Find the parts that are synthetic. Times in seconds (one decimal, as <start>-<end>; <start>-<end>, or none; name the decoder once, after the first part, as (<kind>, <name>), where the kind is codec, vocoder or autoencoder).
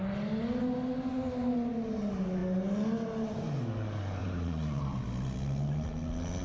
4.2-4.8 (vocoder, Vocos)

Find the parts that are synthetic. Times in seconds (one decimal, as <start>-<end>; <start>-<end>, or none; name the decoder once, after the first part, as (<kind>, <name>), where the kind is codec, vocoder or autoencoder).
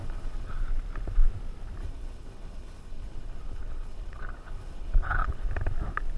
0.0-0.6 (codec, HILCodec); 1.8-5.5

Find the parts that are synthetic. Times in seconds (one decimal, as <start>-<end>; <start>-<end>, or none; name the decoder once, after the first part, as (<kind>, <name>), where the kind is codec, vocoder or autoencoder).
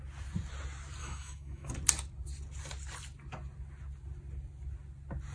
1.0-1.7 (autoencoder, DAC-VAE)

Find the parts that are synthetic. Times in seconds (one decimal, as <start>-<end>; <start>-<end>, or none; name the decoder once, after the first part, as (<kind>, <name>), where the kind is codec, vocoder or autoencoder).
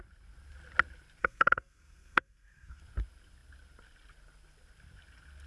1.2-2.8 (codec, SNAC)